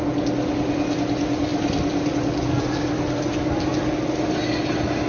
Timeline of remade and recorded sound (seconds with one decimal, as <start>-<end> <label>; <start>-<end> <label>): 0.0-1.5 recorded; 1.5-4.3 remade; 4.3-5.1 recorded